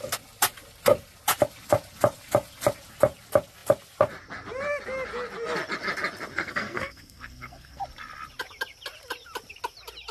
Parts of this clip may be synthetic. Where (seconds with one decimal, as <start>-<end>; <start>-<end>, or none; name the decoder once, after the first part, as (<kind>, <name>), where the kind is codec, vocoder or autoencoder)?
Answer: 6.3-7.8 (codec, SNAC)